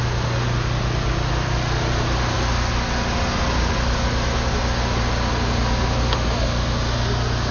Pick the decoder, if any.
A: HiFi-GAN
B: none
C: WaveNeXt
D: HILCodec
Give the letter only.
B